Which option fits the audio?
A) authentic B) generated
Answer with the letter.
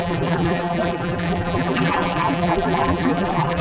B